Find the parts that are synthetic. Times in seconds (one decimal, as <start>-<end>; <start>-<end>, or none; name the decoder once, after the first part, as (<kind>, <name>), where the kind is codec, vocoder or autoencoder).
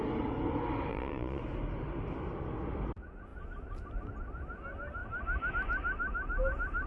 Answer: 0.9-1.4 (vocoder, Vocos)